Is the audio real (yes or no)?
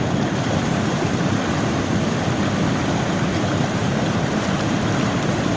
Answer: no